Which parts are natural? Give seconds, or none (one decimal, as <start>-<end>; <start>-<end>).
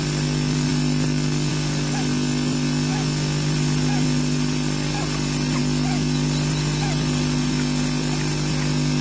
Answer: 0.0-9.0